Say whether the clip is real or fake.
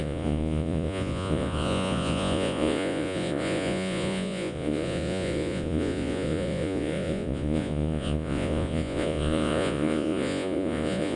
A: fake